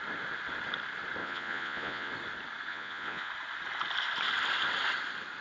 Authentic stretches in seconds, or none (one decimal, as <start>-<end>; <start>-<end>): 0.0-1.2; 2.1-2.7; 3.3-5.4